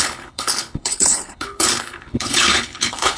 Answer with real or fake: fake